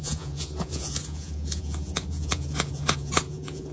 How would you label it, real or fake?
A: fake